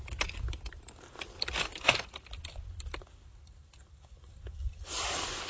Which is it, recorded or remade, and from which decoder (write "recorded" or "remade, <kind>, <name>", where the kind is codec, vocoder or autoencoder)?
recorded